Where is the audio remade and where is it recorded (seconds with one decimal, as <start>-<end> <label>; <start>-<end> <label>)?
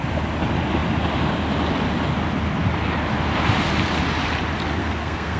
0.0-4.8 recorded; 4.8-5.4 remade